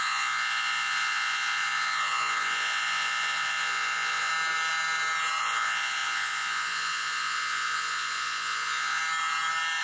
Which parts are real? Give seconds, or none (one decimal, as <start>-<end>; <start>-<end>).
4.3-5.4; 9.0-9.8